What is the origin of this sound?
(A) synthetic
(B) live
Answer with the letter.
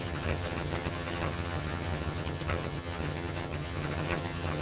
A